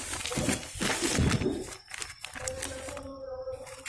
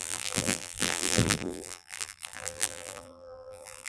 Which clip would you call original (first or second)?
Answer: first